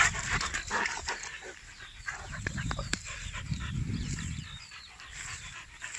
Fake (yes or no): yes